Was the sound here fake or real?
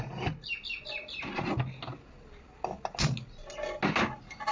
real